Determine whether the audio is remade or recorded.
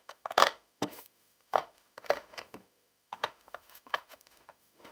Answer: remade